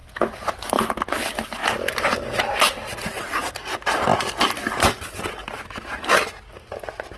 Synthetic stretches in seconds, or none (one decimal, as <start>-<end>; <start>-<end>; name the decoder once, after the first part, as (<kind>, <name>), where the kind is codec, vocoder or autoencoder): 0.0-0.9 (vocoder, BigVGAN v2); 4.1-5.2